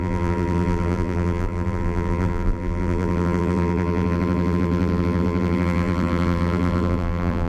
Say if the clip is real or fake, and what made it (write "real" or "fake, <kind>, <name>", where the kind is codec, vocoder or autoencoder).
fake, vocoder, BigVGAN v2